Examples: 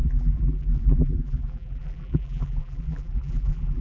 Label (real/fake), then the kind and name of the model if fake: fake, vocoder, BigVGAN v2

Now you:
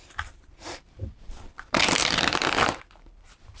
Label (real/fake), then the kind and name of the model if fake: fake, vocoder, BigVGAN v2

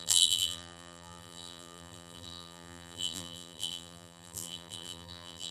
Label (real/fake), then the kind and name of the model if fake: fake, vocoder, BigVGAN v2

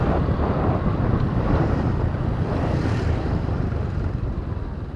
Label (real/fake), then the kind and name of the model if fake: fake, vocoder, BigVGAN v2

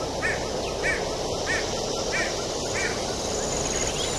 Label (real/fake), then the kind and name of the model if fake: real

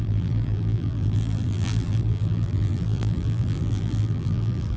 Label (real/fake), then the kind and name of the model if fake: fake, vocoder, BigVGAN v2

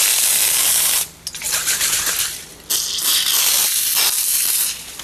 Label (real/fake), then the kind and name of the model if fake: real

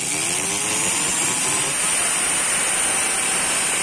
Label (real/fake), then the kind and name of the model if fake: real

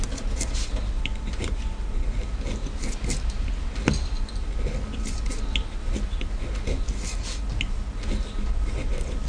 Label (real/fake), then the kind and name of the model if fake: real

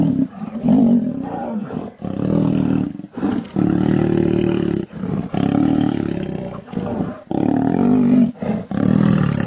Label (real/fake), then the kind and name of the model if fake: fake, vocoder, BigVGAN v2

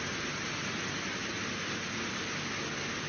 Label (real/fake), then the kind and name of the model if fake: real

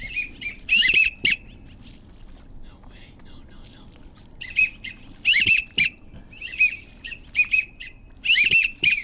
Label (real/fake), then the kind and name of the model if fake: fake, vocoder, BigVGAN v2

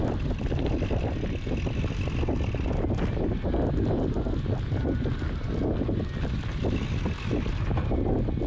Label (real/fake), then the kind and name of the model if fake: real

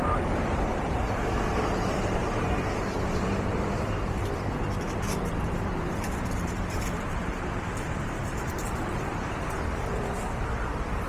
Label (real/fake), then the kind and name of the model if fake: fake, vocoder, BigVGAN v2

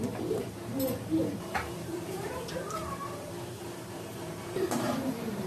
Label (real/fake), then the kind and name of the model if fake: fake, vocoder, BigVGAN v2